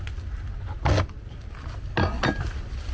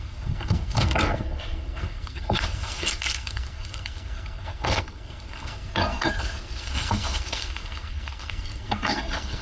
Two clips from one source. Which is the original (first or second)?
first